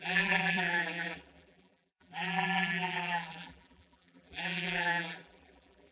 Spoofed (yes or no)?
yes